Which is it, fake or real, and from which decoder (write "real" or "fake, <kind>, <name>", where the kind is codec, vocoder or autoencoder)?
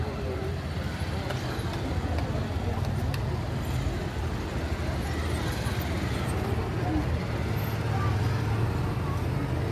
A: real